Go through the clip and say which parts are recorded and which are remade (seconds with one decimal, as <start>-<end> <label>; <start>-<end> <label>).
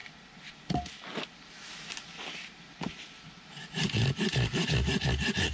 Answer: 0.0-5.5 recorded